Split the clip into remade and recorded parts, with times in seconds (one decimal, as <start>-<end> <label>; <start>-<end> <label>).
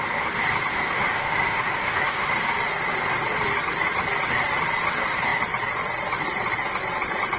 0.0-0.7 recorded; 0.7-2.3 remade; 2.3-7.4 recorded